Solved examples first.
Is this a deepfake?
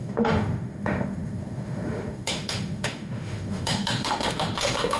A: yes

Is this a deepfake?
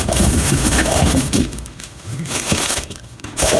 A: yes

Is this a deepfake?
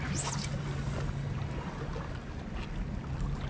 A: no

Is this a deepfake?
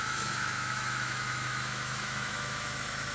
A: yes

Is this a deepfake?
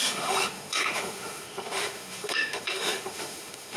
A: yes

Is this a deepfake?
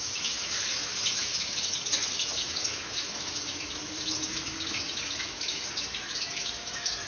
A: yes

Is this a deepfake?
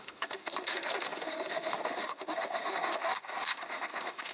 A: yes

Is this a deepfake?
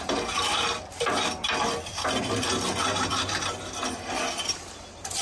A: no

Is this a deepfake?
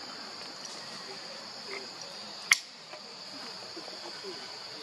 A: no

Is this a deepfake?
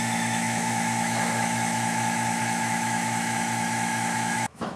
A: yes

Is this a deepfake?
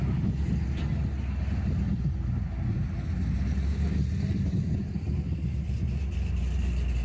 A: no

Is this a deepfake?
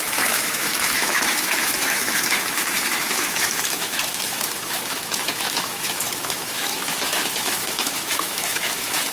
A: yes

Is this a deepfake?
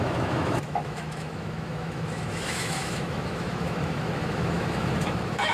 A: yes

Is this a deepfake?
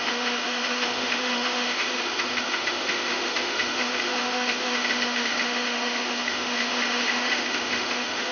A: yes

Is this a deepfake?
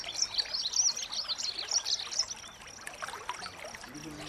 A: no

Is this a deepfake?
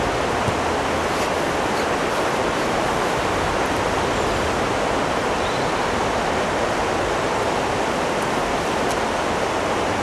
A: no